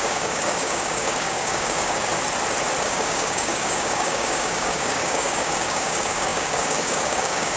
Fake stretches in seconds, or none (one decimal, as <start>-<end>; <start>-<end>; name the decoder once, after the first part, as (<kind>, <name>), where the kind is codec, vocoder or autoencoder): 0.0-2.1 (codec, DAC); 2.8-7.6